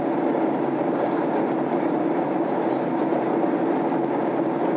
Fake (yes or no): no